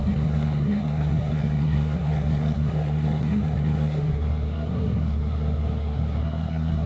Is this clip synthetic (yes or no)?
yes